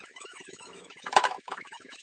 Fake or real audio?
fake